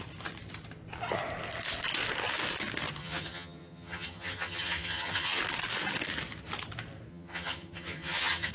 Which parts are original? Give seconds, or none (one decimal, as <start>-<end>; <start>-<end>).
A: 0.0-3.0; 5.4-7.1